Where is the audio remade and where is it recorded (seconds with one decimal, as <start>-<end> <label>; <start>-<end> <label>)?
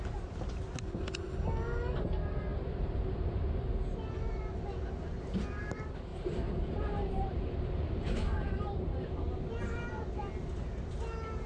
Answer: 0.0-2.5 recorded; 2.5-3.7 remade; 3.7-6.1 recorded; 6.1-9.2 remade; 9.2-11.5 recorded